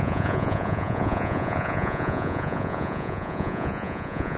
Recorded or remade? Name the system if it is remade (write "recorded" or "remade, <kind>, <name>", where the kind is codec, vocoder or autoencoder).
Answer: remade, vocoder, Vocos